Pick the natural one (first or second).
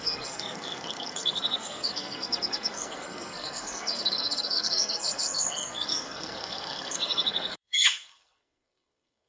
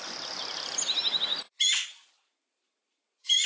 second